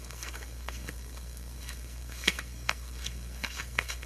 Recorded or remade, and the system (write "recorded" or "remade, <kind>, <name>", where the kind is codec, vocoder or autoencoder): remade, codec, SNAC